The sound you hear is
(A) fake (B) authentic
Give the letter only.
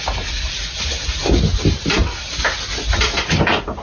B